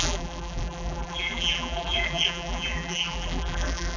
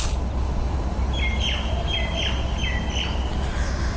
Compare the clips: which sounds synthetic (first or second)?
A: first